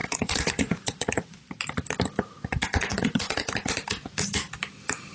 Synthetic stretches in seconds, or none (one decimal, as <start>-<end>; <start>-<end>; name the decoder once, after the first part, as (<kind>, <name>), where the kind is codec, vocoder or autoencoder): 0.0-1.4 (vocoder, Vocos); 2.9-3.5